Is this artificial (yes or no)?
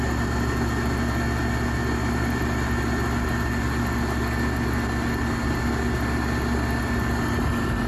no